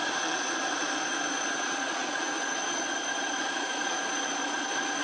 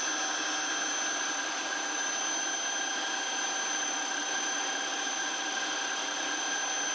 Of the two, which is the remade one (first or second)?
first